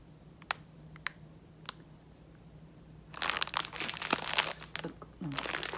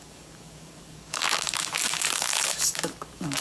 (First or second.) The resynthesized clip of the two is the second